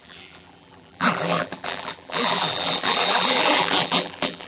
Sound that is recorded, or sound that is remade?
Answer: remade